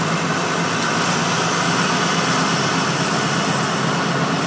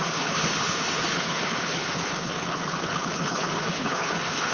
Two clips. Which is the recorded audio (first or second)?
first